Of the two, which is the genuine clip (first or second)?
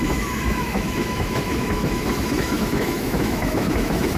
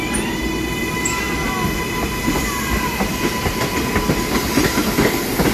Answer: second